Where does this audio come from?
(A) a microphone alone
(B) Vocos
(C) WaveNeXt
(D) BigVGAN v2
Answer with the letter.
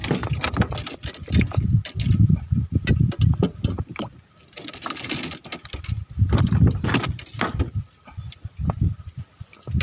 A